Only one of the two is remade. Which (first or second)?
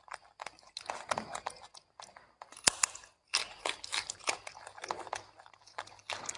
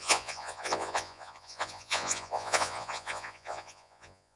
second